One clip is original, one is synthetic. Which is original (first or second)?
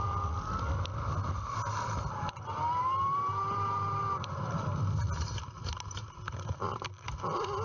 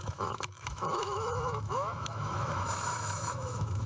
first